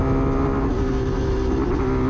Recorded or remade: recorded